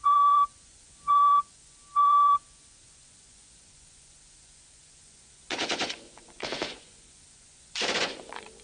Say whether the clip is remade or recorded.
remade